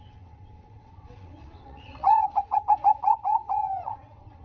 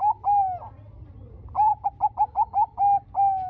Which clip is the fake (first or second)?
first